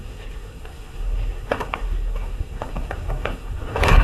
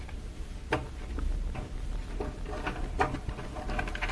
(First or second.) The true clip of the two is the second